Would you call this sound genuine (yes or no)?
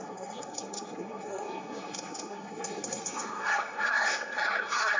no